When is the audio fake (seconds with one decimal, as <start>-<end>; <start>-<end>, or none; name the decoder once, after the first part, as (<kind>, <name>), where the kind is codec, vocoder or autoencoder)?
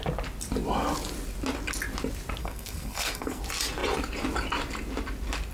2.4-3.4 (codec, SNAC)